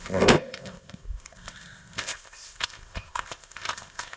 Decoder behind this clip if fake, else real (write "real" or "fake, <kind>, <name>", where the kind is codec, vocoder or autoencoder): fake, codec, ZipCodec